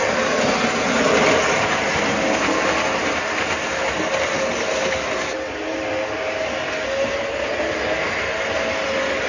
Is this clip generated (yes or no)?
no